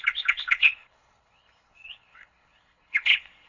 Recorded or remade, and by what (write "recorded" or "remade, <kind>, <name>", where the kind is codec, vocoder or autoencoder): remade, codec, HILCodec